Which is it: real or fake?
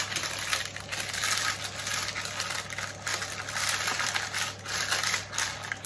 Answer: real